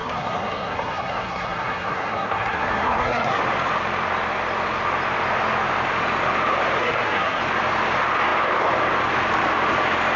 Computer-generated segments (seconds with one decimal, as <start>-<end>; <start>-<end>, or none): 0.0-3.4; 6.8-7.4